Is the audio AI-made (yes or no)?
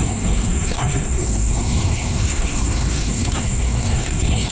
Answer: yes